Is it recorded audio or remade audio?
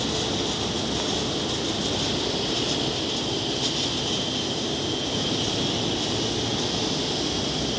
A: recorded